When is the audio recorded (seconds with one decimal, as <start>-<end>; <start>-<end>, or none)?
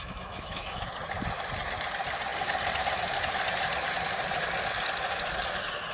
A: 0.9-5.9